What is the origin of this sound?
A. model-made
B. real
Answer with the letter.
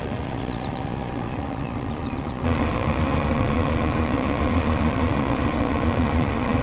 A